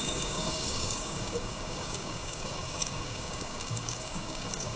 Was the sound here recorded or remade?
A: remade